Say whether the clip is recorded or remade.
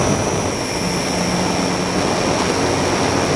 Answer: recorded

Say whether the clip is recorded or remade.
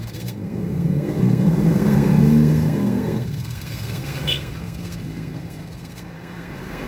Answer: remade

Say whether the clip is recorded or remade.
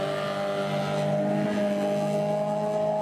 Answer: recorded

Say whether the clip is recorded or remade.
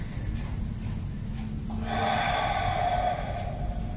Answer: recorded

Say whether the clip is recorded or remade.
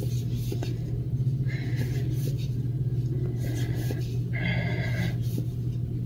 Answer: recorded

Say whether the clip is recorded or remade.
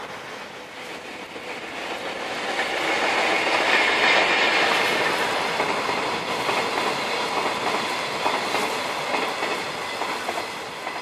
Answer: recorded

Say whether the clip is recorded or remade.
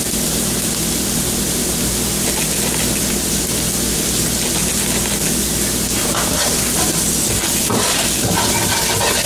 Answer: recorded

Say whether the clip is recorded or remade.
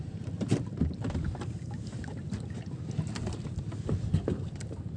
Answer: recorded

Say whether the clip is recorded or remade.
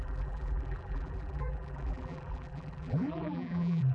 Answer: remade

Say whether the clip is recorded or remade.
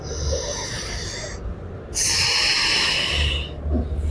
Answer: recorded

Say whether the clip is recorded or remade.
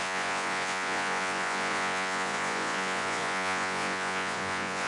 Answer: remade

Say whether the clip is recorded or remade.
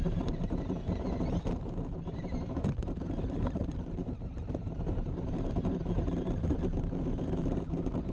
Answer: remade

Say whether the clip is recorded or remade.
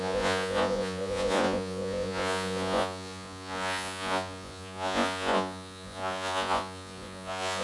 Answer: remade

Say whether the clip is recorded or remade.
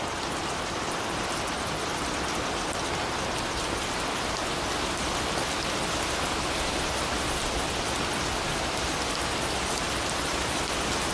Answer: recorded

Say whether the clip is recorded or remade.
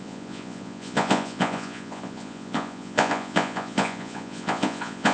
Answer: remade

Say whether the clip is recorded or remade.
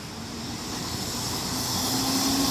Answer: recorded